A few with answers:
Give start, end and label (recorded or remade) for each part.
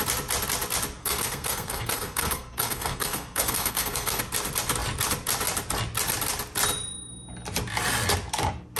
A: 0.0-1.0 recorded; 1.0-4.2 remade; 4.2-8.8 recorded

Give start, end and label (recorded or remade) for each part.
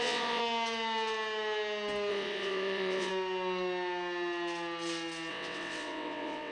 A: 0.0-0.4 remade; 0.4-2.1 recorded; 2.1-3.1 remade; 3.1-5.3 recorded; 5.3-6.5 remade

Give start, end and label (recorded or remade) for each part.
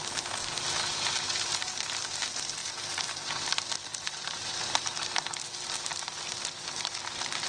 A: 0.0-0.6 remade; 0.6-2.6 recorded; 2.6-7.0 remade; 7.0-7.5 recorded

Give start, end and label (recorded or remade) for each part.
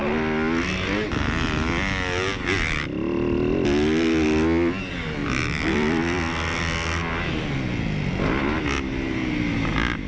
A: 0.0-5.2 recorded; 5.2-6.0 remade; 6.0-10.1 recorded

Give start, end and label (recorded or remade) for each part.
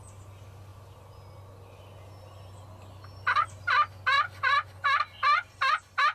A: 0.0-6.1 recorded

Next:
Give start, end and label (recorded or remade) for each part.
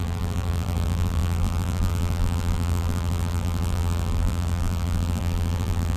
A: 0.0-6.0 remade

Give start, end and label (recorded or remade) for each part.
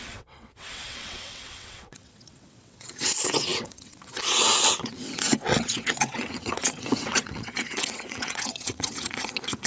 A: 0.0-9.7 remade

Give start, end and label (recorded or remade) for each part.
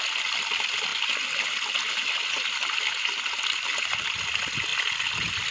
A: 0.0-5.5 recorded